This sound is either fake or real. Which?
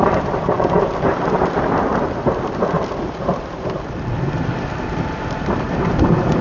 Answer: fake